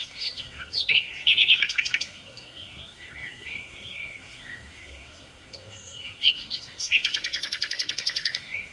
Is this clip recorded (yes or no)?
no